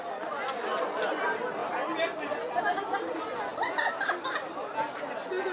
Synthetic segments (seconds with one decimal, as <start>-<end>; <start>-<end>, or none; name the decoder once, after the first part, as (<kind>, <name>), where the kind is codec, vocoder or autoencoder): none